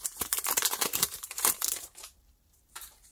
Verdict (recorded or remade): remade